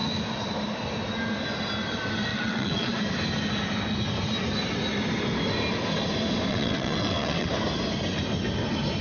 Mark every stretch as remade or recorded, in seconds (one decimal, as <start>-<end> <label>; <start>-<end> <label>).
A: 0.0-2.3 recorded; 2.3-2.9 remade; 2.9-6.5 recorded; 6.5-7.5 remade; 7.5-9.0 recorded